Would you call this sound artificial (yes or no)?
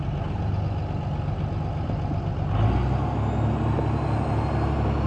no